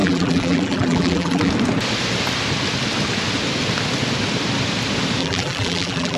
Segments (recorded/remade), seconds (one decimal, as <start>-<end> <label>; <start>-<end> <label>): 0.0-1.5 remade; 1.5-5.2 recorded; 5.2-6.2 remade